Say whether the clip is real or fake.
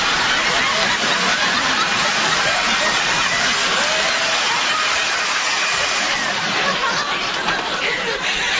real